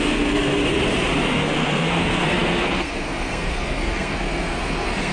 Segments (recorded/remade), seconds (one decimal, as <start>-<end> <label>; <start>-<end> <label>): 0.0-0.6 remade; 0.6-1.3 recorded; 1.3-5.1 remade